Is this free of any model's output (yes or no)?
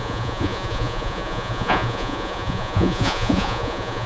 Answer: no